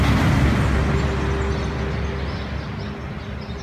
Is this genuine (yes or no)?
yes